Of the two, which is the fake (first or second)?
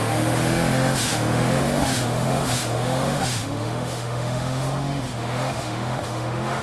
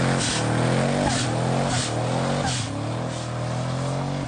first